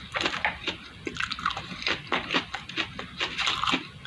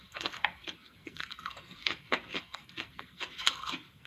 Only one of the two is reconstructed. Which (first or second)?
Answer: second